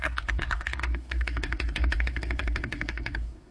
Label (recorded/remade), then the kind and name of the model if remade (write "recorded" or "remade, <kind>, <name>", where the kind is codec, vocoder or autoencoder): remade, codec, SNAC